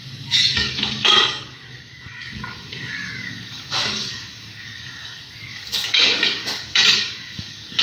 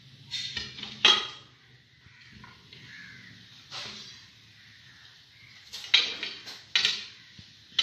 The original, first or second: second